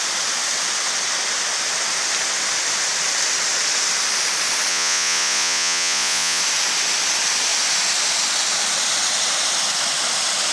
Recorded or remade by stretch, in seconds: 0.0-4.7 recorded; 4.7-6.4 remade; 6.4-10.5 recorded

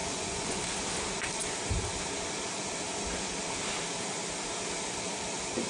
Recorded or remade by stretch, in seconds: 0.0-0.6 remade; 0.6-5.7 recorded

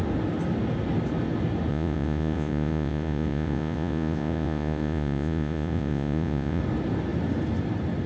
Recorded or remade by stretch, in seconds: 0.0-1.7 recorded; 1.7-6.6 remade; 6.6-8.1 recorded

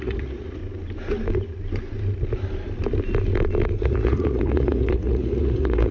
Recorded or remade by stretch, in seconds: 0.0-0.6 remade; 0.6-3.8 recorded; 3.8-5.9 remade